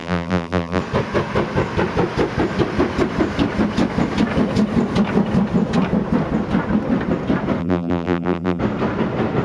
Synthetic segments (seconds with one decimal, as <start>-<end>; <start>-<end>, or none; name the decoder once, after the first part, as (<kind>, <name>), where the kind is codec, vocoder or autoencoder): 0.0-0.8 (vocoder, BigVGAN v2); 7.6-8.6